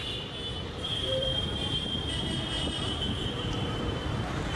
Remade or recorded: remade